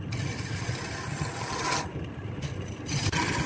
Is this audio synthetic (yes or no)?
no